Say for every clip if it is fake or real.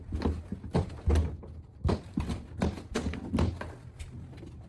real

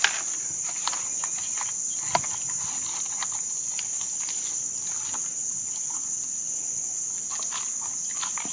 real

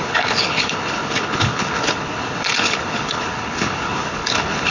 fake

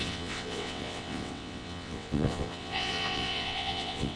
fake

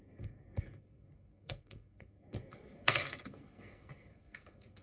fake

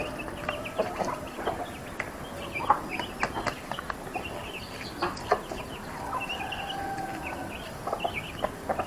real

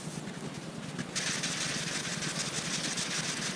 real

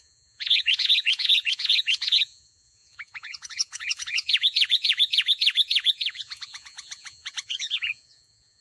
fake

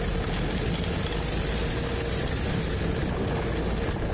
real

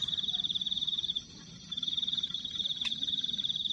fake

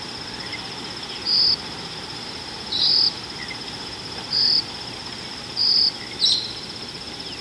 real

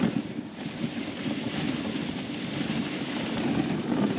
real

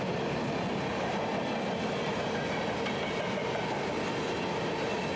real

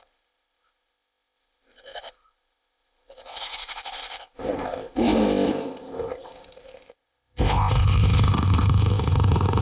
fake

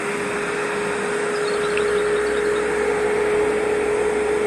real